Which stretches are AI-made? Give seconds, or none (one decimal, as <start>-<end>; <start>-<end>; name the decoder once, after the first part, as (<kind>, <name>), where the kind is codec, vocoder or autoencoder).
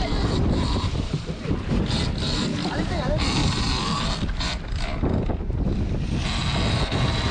0.0-4.9 (vocoder, BigVGAN v2); 6.7-7.3